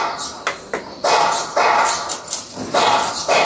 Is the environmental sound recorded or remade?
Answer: recorded